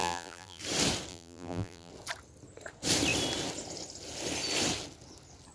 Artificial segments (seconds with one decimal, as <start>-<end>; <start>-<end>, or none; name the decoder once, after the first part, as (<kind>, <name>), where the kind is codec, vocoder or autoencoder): 0.0-0.6 (vocoder, BigVGAN v2); 1.1-1.9